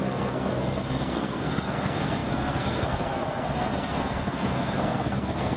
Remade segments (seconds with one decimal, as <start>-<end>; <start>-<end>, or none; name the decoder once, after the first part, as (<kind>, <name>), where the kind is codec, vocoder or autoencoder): 0.0-5.6 (codec, SNAC)